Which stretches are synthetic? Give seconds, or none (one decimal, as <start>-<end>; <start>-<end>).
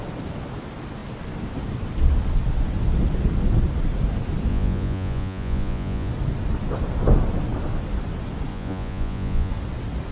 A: 4.5-6.1; 8.5-9.5